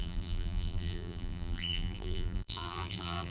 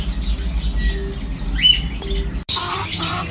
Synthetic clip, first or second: first